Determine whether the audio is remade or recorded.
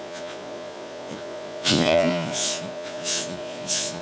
remade